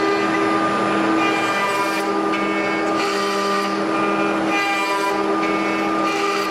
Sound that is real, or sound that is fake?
real